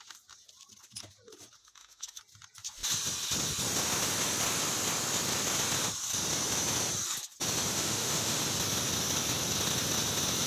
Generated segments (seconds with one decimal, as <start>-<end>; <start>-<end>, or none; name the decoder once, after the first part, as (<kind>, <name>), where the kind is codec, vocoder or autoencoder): 1.6-2.2 (autoencoder, DAC-VAE); 7.7-8.4